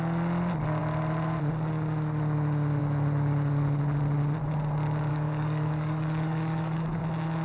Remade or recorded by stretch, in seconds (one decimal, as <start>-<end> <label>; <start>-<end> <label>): 0.0-5.1 recorded; 5.1-7.0 remade; 7.0-7.4 recorded